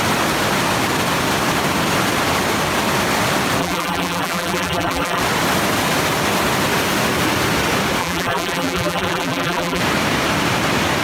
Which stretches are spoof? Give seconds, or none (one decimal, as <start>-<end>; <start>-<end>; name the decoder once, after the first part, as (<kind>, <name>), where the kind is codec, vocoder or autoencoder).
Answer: 3.6-5.2 (vocoder, BigVGAN v2); 8.0-9.8